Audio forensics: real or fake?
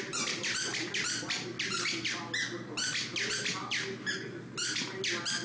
real